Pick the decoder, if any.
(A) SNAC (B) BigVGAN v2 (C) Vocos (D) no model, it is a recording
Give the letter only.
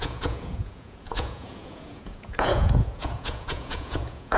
C